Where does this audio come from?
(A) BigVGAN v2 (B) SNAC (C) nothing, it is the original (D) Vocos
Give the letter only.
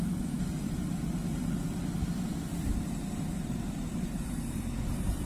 A